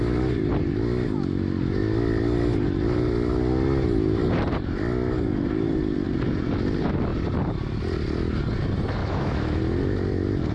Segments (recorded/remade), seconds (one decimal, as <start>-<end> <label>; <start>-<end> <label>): 0.0-9.0 recorded; 9.0-9.6 remade; 9.6-10.5 recorded